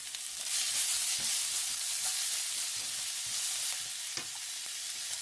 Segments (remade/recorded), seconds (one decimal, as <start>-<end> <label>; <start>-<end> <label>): 0.0-5.2 recorded